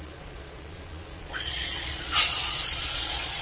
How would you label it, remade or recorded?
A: remade